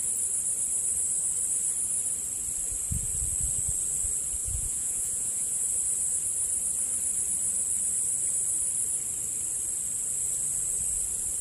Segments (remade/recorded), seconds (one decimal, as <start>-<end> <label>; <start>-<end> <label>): 0.0-4.4 recorded; 4.4-5.6 remade; 5.6-11.4 recorded